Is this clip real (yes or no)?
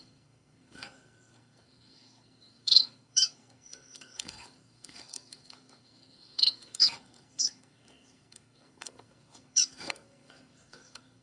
no